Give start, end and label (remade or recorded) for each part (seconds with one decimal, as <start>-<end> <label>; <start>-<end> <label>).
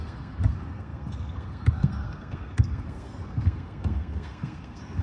0.0-5.0 remade